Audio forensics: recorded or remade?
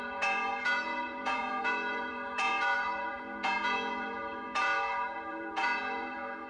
remade